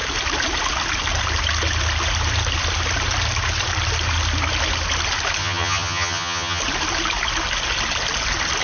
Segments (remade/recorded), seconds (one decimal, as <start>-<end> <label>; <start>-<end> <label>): 0.0-5.4 recorded; 5.4-6.6 remade; 6.6-8.6 recorded